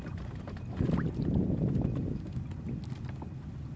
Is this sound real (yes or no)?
yes